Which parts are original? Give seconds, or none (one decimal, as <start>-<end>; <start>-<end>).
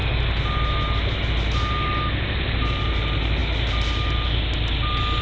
0.0-5.2